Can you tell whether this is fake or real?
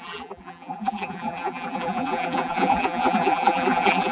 fake